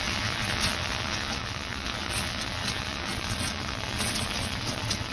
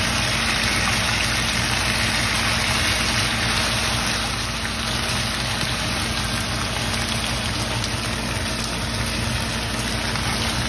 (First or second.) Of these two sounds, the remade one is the first